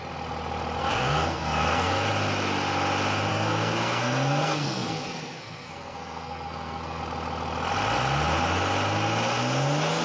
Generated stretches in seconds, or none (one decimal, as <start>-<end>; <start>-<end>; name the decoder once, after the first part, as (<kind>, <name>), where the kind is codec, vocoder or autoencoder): 0.8-2.1 (codec, SNAC); 3.3-7.0